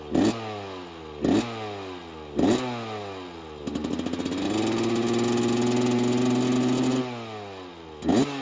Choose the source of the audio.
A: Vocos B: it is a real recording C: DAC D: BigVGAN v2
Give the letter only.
B